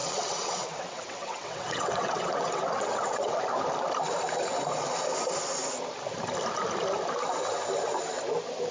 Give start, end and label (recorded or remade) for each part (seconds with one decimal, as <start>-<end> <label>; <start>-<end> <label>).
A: 0.0-3.4 remade; 3.4-8.7 recorded